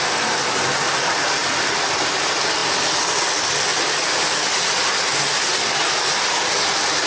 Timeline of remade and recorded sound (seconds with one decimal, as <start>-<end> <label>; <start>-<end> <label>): 0.0-7.1 recorded